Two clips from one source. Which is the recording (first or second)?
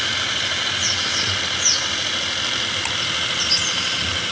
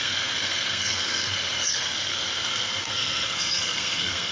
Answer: first